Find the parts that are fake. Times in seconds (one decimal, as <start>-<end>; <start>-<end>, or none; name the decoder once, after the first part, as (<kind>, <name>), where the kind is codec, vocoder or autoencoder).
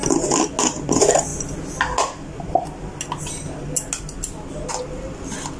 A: none